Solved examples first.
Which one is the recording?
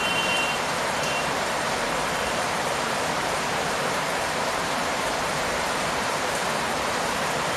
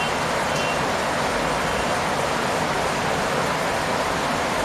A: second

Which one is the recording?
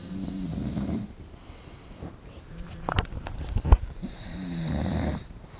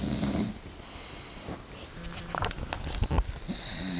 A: second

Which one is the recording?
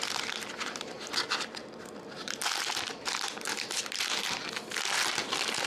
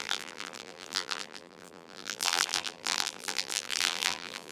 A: first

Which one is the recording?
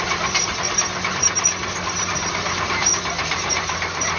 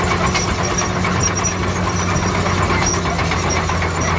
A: second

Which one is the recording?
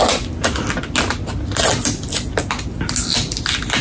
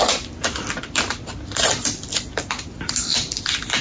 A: first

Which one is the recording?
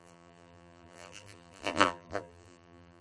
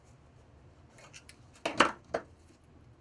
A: second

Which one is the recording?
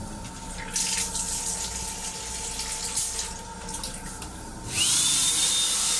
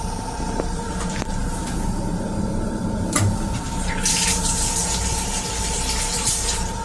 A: first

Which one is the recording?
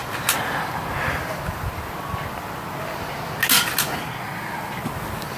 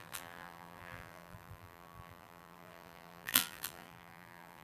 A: first